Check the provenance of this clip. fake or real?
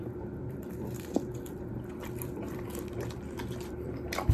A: fake